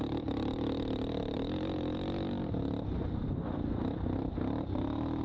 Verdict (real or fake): real